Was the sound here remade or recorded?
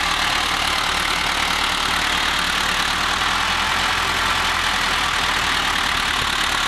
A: recorded